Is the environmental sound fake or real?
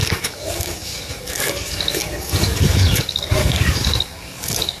fake